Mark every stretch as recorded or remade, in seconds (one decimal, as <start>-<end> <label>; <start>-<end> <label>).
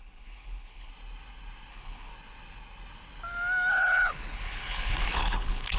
0.0-0.9 remade; 0.9-1.7 recorded; 1.7-2.1 remade; 2.1-3.7 recorded; 3.7-5.8 remade